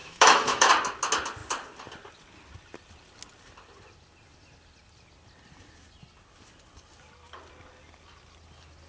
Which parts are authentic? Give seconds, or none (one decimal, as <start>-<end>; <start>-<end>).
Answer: 0.7-8.9